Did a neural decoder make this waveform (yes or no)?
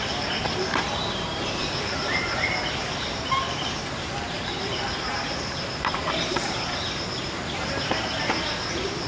yes